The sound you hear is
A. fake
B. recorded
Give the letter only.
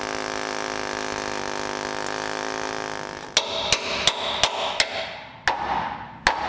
B